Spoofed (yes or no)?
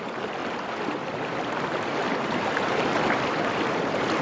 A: no